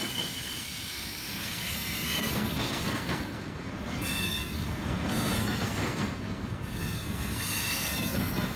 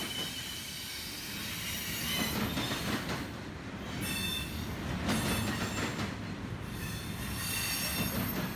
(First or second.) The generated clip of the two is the first